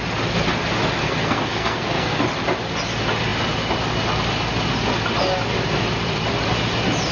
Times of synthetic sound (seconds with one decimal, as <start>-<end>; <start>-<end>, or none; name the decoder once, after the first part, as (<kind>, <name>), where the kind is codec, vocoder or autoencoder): 1.0-2.2 (codec, SNAC)